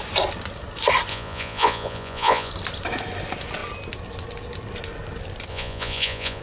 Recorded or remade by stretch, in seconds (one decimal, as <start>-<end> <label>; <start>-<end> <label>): 0.0-1.1 recorded; 1.1-2.5 remade; 2.5-5.5 recorded; 5.5-6.4 remade